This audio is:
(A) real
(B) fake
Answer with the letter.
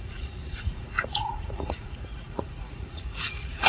B